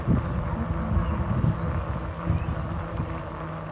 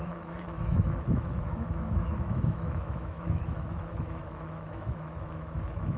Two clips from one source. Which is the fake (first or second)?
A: second